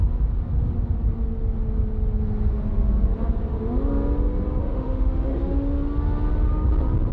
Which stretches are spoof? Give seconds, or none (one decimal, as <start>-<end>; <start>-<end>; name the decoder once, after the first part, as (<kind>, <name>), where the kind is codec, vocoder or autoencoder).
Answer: 4.6-5.4 (autoencoder, DAC-VAE)